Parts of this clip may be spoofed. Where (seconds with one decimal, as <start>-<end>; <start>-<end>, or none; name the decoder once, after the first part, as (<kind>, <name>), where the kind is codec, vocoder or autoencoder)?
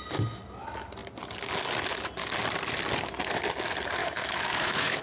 4.0-5.0 (autoencoder, DAC-VAE)